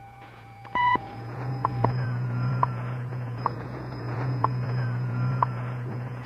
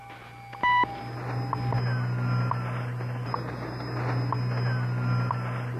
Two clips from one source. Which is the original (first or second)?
second